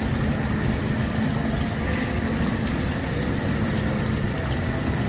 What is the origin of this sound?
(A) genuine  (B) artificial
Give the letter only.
A